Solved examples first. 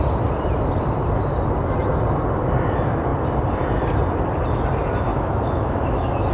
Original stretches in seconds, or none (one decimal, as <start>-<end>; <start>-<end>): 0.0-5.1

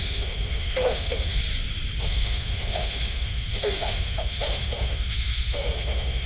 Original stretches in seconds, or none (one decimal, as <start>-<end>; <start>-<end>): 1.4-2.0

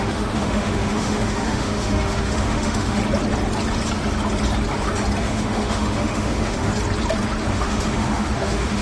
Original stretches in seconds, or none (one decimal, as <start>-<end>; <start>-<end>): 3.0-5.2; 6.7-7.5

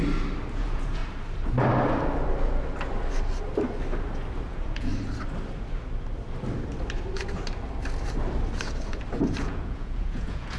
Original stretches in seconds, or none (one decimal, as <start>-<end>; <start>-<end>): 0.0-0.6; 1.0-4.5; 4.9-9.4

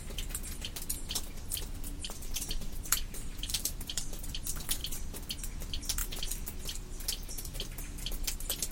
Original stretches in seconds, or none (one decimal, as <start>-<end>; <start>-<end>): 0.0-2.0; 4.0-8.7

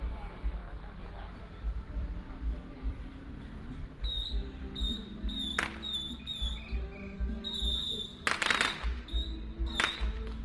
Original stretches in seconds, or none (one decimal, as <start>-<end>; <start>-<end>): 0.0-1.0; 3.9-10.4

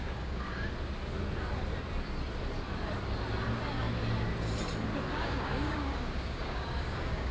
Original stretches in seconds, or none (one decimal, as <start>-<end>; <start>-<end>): 0.7-5.1